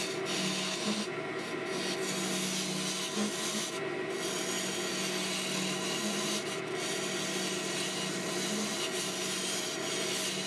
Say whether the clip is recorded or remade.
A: recorded